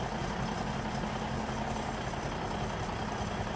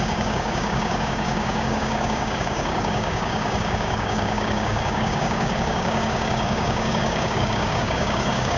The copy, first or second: second